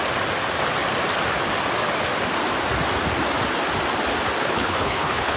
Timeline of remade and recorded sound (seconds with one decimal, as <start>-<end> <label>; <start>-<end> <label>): 0.0-4.4 recorded; 4.4-5.4 remade